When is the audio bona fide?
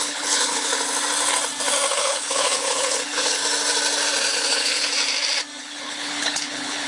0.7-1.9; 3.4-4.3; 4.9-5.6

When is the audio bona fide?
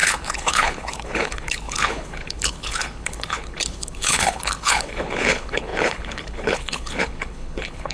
none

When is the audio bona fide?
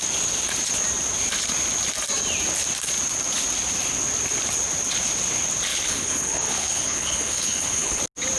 0.0-5.7; 8.0-8.4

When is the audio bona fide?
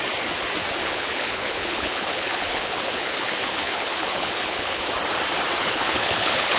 0.0-0.8; 4.8-5.6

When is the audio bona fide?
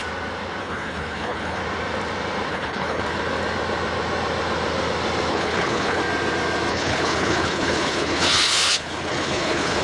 0.0-0.6; 1.6-2.5; 3.0-5.3; 6.0-6.7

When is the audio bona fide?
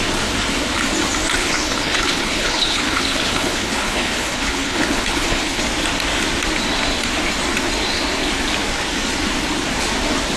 0.0-1.4; 5.6-10.4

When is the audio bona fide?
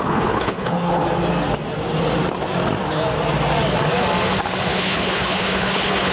1.0-4.7